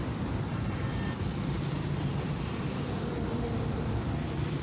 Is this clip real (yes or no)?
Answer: no